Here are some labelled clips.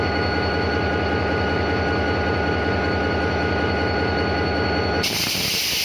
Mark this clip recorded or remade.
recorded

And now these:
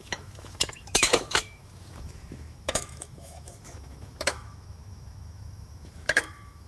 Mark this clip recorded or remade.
remade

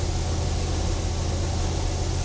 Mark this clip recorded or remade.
recorded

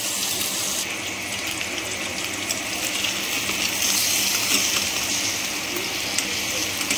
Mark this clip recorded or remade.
recorded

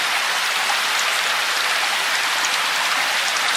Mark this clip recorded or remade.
recorded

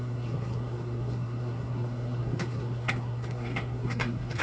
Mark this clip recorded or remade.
remade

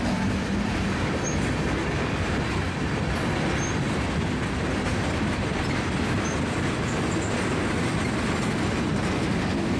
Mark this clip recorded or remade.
recorded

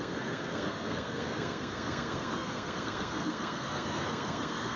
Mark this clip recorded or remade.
remade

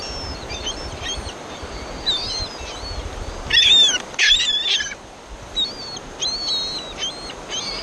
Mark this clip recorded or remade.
recorded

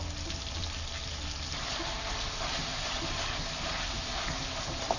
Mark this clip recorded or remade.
recorded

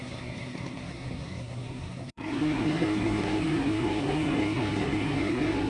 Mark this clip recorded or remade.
remade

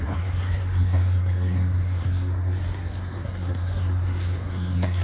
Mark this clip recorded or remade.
remade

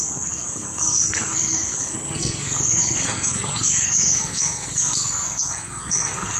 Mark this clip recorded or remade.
remade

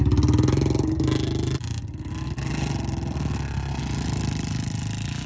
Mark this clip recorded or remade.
recorded